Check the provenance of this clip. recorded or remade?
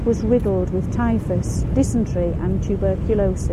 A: recorded